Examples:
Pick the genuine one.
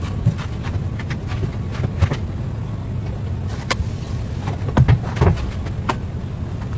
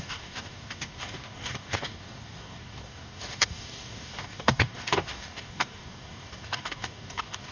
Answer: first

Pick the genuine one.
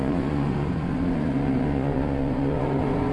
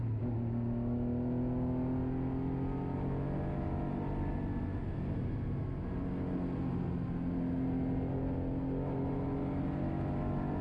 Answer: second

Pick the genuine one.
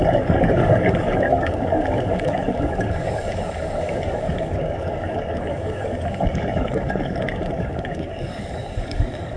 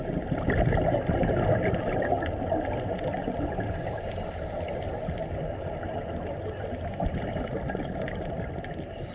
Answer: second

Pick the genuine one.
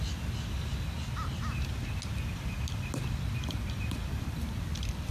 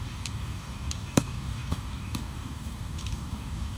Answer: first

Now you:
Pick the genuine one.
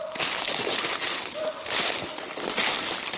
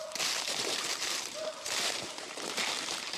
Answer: first